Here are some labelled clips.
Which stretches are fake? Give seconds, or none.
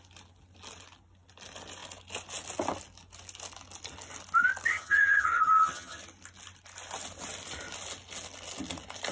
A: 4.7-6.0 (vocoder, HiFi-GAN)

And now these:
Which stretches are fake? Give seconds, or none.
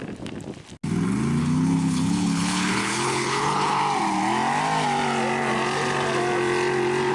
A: 1.4-3.8 (codec, HILCodec)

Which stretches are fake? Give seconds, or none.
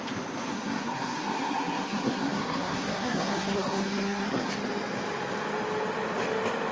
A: 0.5-4.5 (codec, SNAC)